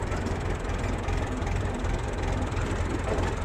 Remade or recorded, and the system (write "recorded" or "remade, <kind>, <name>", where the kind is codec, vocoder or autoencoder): remade, vocoder, BigVGAN v2